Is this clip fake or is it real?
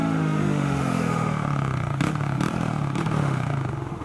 fake